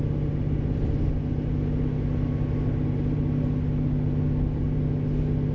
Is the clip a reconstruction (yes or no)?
no